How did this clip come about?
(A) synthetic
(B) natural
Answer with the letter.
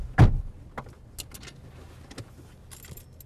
B